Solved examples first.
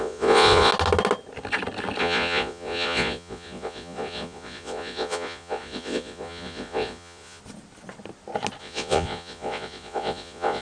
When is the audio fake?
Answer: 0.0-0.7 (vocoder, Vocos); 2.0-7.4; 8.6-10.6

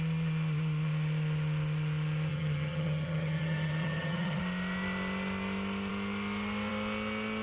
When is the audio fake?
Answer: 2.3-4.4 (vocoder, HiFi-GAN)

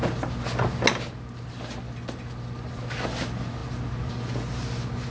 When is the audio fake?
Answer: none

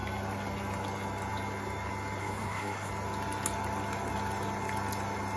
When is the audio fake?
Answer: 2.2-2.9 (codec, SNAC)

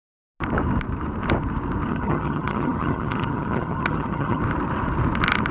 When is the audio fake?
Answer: 1.9-4.4 (vocoder, HiFi-GAN)

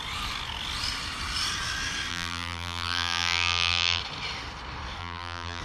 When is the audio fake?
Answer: 2.1-4.0 (vocoder, BigVGAN v2); 5.0-5.6